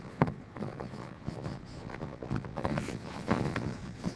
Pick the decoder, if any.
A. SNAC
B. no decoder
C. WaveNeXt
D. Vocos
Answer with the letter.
D